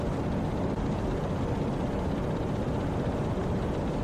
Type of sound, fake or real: real